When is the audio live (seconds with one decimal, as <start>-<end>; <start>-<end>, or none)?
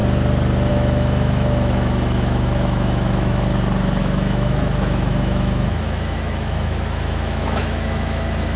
0.0-0.7; 3.5-4.0